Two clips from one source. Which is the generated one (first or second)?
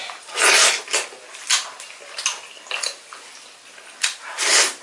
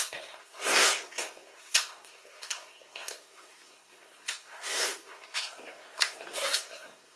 second